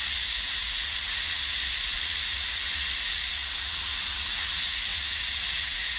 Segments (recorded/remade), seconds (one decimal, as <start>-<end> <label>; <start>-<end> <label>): 0.0-6.0 remade